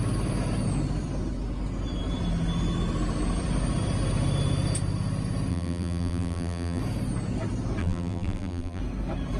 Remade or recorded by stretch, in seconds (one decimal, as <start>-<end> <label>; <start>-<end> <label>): 0.0-5.5 recorded; 5.5-6.8 remade; 6.8-7.8 recorded; 7.8-8.8 remade; 8.8-9.4 recorded

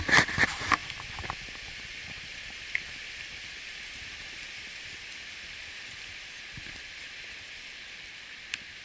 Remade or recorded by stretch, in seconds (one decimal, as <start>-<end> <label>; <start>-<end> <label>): 0.0-0.8 remade; 0.8-3.1 recorded; 3.1-8.8 remade

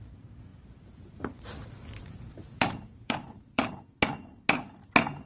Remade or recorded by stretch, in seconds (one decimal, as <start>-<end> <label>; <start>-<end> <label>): 0.0-0.5 recorded; 0.5-3.7 remade; 3.7-5.3 recorded

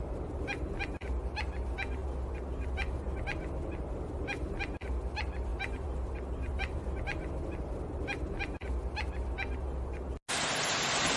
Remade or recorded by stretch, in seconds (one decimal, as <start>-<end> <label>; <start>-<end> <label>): 0.0-5.5 recorded; 5.5-6.8 remade; 6.8-11.2 recorded

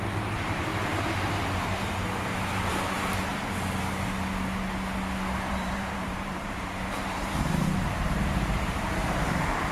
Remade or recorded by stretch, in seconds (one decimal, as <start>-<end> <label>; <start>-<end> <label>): 0.0-3.3 remade; 3.3-5.5 recorded; 5.5-9.7 remade